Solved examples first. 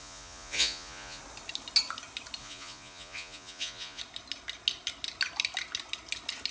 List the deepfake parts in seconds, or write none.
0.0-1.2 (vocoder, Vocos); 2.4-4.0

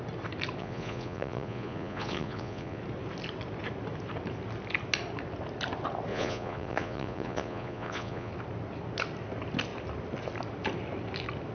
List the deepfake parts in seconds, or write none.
0.6-2.8 (vocoder, Vocos); 6.1-8.3

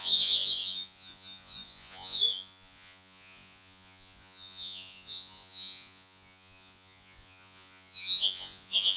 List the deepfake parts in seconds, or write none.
0.0-9.0 (vocoder, Vocos)

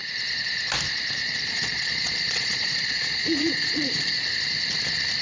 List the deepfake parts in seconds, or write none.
1.2-4.3 (vocoder, Vocos)